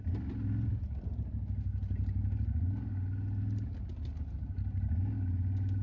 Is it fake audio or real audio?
real